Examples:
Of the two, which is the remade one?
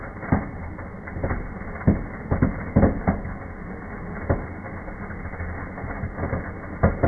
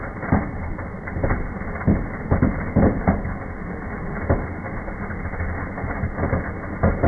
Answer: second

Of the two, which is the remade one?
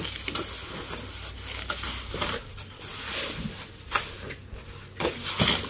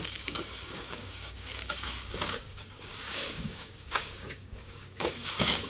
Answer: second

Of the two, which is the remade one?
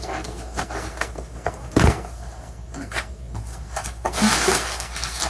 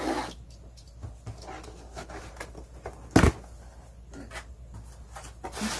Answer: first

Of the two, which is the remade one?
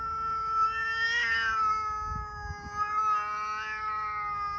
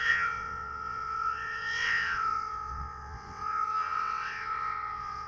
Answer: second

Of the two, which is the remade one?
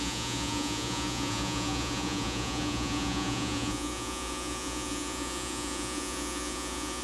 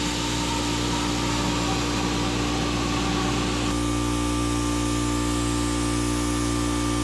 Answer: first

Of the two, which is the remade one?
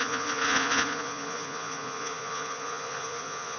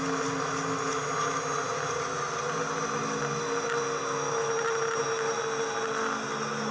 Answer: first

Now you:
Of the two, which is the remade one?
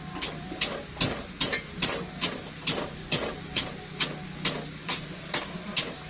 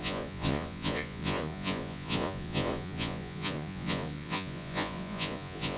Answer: second